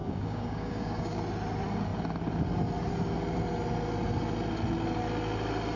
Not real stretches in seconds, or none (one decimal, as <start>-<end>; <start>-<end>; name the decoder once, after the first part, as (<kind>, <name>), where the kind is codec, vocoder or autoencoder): 0.0-1.2 (codec, DAC)